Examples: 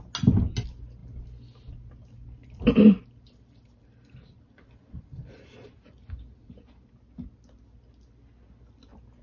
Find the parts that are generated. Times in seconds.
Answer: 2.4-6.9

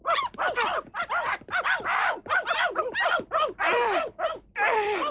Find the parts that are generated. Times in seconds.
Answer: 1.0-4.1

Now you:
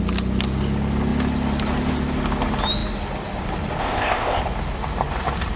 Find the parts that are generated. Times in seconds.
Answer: 3.8-4.4

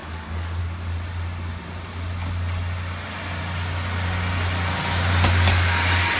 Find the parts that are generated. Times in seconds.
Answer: 0.0-0.6

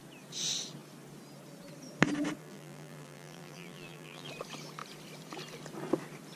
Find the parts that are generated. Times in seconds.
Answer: 2.4-4.3